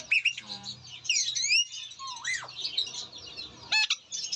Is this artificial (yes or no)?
no